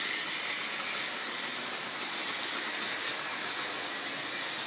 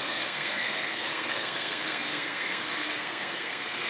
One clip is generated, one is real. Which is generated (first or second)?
second